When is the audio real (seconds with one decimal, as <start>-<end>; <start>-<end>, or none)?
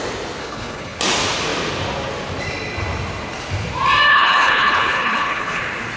0.0-0.4; 1.0-4.1; 5.6-6.0